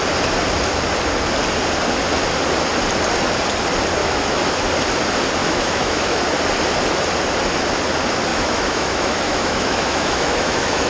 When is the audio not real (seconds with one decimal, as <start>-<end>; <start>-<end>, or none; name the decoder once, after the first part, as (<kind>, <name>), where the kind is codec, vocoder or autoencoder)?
4.0-4.6 (autoencoder, DAC-VAE); 5.4-6.2; 8.3-10.9